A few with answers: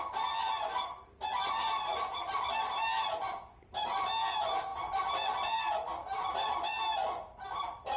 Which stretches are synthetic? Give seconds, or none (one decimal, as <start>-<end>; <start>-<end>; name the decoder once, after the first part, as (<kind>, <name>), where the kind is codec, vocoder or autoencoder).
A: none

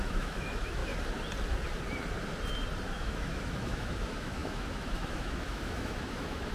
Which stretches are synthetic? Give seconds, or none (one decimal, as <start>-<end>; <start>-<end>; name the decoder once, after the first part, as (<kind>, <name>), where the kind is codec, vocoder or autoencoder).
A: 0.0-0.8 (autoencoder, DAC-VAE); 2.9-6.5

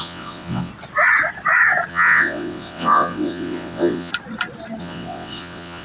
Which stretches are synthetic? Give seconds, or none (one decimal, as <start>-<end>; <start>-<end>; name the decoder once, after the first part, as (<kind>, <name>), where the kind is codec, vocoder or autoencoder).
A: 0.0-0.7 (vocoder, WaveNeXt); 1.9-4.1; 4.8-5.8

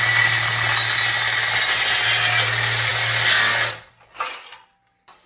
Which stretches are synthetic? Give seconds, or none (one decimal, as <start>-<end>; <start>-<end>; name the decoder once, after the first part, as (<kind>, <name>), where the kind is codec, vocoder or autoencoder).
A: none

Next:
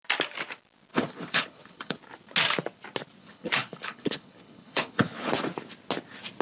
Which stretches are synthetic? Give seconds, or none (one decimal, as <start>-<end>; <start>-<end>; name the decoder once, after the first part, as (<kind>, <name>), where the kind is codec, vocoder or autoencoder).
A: 0.9-2.0 (codec, HILCodec); 3.2-5.3